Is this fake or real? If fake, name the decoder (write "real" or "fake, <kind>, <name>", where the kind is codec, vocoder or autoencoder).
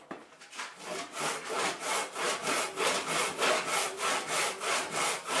real